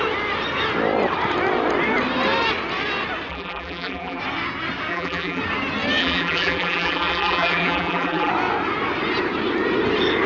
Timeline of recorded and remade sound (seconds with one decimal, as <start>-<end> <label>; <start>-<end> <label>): 0.0-3.3 recorded; 3.3-4.2 remade; 4.2-4.9 recorded; 4.9-5.4 remade; 5.4-6.0 recorded; 6.0-8.3 remade; 8.3-10.3 recorded